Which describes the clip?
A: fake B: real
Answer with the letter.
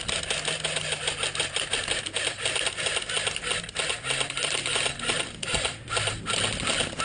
B